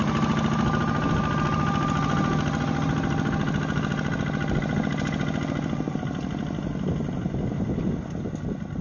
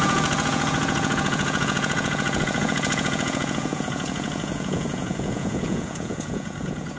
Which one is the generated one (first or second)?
second